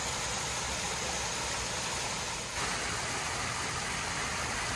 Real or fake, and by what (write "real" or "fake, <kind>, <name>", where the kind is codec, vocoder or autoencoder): real